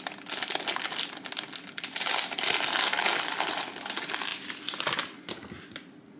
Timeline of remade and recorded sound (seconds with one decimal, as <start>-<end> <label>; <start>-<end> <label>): 0.0-6.2 recorded